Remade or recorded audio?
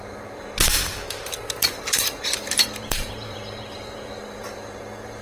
remade